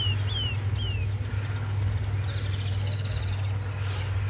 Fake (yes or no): no